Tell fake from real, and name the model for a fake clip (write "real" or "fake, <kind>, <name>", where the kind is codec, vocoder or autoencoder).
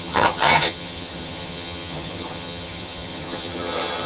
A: fake, vocoder, HiFi-GAN